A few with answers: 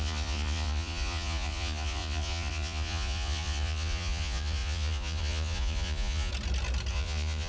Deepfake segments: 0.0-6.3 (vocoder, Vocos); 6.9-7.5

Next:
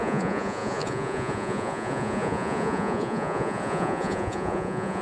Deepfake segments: 0.0-5.0 (vocoder, Vocos)

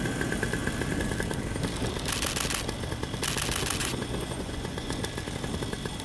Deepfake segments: 3.8-5.0 (vocoder, Vocos)

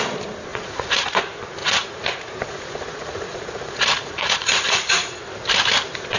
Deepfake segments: 0.5-1.2 (vocoder, Vocos); 1.6-5.3

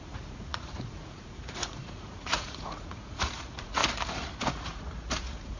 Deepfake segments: 0.0-3.8 (vocoder, Vocos); 4.4-5.6